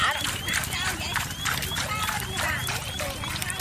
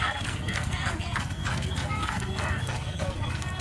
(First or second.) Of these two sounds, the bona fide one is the first